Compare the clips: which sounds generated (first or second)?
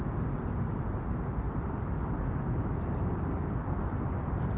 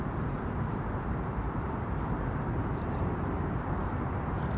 second